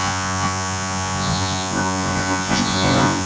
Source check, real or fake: fake